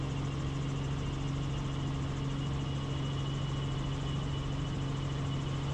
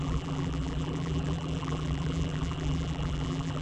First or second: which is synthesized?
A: second